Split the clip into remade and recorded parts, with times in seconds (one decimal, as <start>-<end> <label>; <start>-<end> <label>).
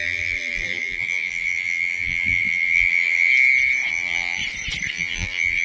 0.0-3.3 remade; 3.3-3.9 recorded; 3.9-4.4 remade; 4.4-4.9 recorded; 4.9-5.6 remade